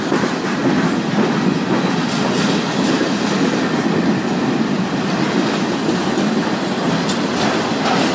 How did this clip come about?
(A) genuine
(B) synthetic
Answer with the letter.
A